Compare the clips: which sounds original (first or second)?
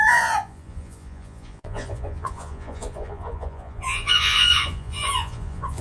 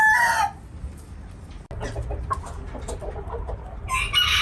second